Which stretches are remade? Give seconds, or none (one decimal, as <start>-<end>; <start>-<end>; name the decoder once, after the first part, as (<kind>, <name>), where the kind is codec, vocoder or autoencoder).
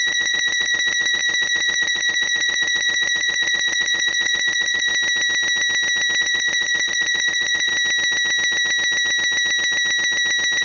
0.0-4.9 (vocoder, Vocos); 6.2-7.7